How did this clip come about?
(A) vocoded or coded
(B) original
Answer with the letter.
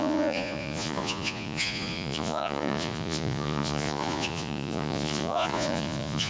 A